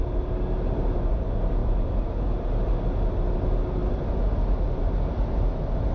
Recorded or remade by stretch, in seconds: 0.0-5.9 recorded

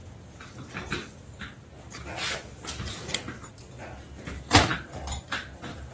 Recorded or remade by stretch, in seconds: 0.0-5.9 recorded

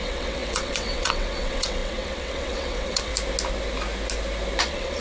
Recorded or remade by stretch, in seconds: 0.0-3.1 remade; 3.1-4.6 recorded; 4.6-5.0 remade

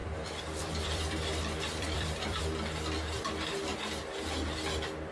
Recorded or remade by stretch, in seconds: 0.0-2.4 remade; 2.4-5.1 recorded

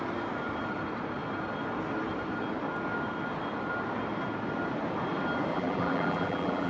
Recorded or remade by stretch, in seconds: 0.0-5.5 recorded; 5.5-6.7 remade

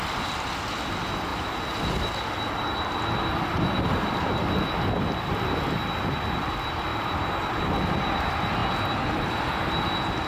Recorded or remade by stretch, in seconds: 0.0-10.3 recorded

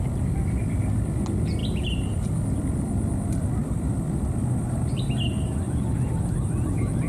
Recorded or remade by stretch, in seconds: 0.0-7.1 recorded

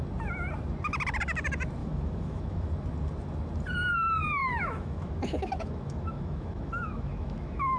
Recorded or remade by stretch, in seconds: 0.0-1.8 recorded; 1.8-2.7 remade; 2.7-4.4 recorded; 4.4-7.8 remade